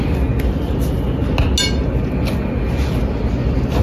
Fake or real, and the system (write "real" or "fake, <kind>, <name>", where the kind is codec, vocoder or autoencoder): real